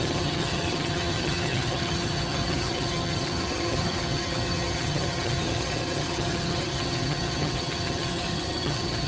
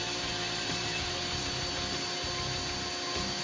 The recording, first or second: second